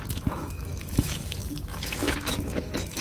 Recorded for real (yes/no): no